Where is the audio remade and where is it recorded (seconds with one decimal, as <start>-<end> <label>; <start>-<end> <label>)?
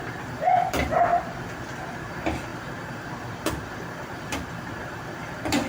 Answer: 0.0-1.1 remade; 1.1-2.1 recorded; 2.1-5.7 remade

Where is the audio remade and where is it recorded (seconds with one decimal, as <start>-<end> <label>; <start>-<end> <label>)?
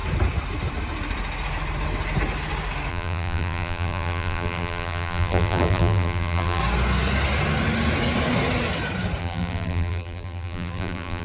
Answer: 0.0-2.9 recorded; 2.9-6.6 remade; 6.6-9.2 recorded; 9.2-11.2 remade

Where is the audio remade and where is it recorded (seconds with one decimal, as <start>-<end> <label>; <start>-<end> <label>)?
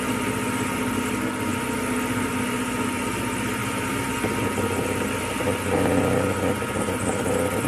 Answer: 0.0-3.6 recorded; 3.6-4.1 remade; 4.1-7.7 recorded